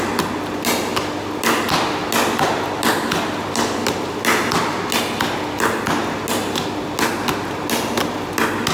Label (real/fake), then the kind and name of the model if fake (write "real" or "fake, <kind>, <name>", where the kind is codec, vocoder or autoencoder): real